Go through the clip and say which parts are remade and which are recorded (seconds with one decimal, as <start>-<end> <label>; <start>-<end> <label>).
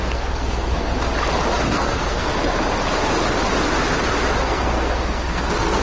0.0-0.9 remade; 0.9-1.6 recorded; 1.6-2.3 remade; 2.3-4.4 recorded; 4.4-5.8 remade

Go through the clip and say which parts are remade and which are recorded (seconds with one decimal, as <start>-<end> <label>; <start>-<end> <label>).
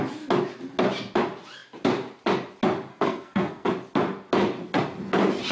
0.0-2.9 recorded; 2.9-3.7 remade; 3.7-5.5 recorded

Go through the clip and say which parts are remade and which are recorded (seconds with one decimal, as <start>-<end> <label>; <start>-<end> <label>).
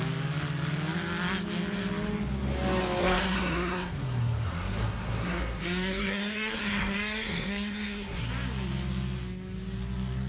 0.0-3.0 recorded; 3.0-8.3 remade; 8.3-10.3 recorded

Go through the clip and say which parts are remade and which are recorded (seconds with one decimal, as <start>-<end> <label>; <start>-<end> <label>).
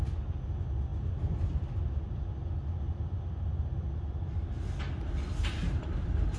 0.0-6.4 recorded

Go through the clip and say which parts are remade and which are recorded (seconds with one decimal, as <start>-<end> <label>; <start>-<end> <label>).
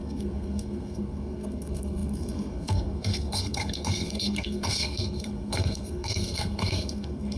0.0-7.4 remade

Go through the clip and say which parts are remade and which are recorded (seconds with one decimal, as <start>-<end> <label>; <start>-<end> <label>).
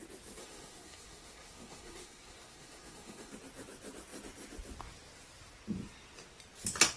0.0-0.4 recorded; 0.4-3.3 remade; 3.3-7.0 recorded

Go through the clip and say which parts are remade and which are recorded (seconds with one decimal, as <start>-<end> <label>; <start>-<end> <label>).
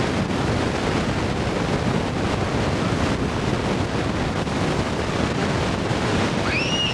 0.0-6.9 recorded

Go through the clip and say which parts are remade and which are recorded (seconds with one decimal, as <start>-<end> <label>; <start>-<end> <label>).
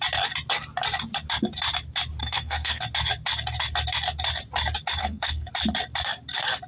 0.0-2.2 recorded; 2.2-2.8 remade; 2.8-5.0 recorded; 5.0-5.5 remade; 5.5-6.7 recorded